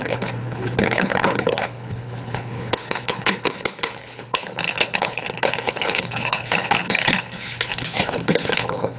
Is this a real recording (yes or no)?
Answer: no